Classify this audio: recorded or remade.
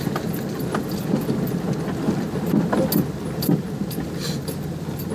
recorded